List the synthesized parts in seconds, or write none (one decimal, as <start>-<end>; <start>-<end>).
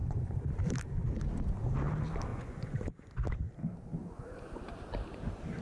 0.0-0.5; 2.3-3.1; 4.0-4.6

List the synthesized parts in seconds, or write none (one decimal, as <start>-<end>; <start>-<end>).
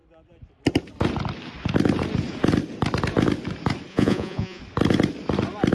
3.9-4.6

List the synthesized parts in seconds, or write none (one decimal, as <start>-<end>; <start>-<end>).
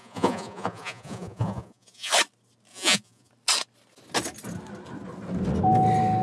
0.0-2.1; 2.7-3.3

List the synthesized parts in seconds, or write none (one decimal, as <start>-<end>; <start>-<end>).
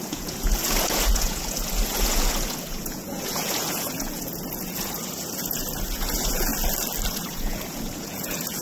0.0-6.5; 7.1-8.6